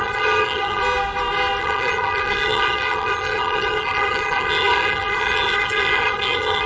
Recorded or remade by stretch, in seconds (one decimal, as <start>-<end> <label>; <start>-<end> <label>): 0.0-0.8 remade; 0.8-1.6 recorded; 1.6-6.7 remade